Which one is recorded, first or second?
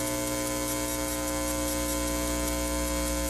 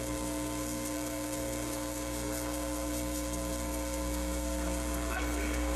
first